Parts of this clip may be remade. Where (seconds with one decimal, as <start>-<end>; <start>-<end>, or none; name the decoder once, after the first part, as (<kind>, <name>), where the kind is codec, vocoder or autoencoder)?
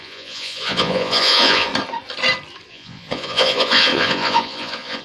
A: 0.0-1.7 (vocoder, Vocos); 2.7-5.0